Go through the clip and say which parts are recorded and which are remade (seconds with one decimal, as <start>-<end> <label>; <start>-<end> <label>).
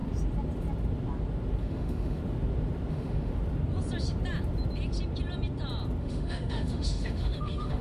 0.0-1.6 recorded; 1.6-2.2 remade; 2.2-2.9 recorded; 2.9-3.3 remade; 3.3-6.0 recorded; 6.0-7.8 remade